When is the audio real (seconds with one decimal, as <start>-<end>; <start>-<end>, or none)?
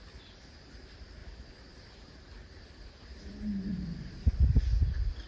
0.0-5.3